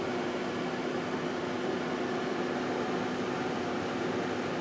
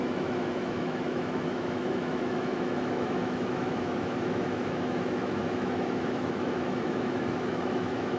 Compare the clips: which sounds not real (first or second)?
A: second